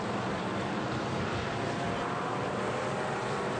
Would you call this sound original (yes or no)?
yes